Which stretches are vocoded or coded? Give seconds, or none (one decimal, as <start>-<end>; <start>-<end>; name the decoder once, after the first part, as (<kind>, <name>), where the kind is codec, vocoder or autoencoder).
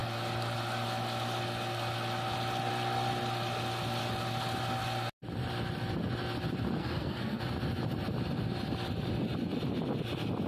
6.8-7.4 (codec, SNAC)